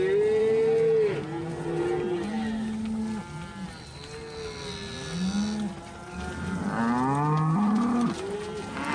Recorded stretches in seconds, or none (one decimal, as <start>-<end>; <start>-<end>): 0.0-8.9